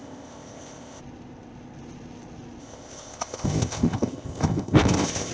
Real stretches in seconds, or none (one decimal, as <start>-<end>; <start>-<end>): 1.0-2.6